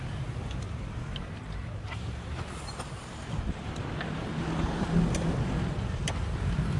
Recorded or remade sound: remade